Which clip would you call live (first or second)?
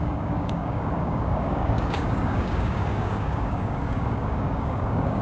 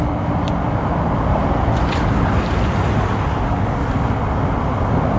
second